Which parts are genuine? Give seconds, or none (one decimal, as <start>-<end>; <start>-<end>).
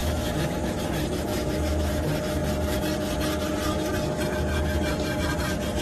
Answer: 0.8-1.3; 1.9-5.8